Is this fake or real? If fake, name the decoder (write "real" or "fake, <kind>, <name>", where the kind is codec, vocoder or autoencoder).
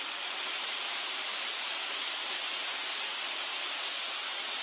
real